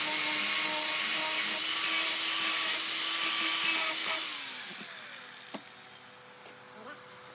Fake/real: real